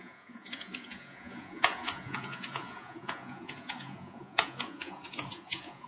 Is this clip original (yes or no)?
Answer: no